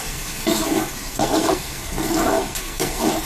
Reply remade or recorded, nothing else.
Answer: remade